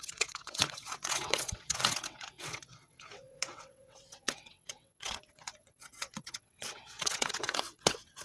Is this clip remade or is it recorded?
remade